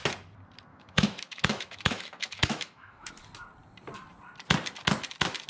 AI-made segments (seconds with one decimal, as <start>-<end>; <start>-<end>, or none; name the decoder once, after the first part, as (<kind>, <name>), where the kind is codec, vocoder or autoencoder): 0.7-3.1 (autoencoder, DAC-VAE)